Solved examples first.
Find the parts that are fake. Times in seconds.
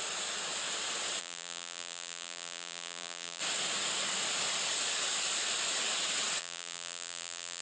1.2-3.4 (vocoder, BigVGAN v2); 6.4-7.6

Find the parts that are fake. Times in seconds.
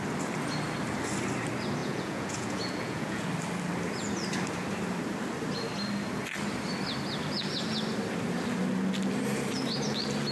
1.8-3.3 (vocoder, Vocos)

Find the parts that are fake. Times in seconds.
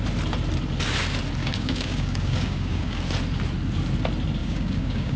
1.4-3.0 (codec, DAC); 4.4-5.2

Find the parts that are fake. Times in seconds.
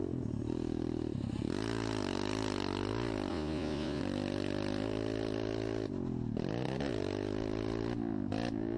3.3-4.0 (vocoder, Vocos)